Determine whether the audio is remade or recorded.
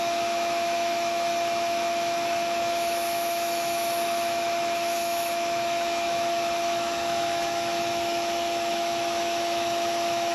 remade